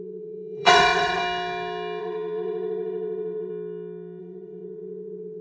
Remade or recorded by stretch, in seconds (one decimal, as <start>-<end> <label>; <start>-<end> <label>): 0.0-1.2 remade; 1.2-2.0 recorded; 2.0-3.5 remade; 3.5-4.2 recorded; 4.2-5.4 remade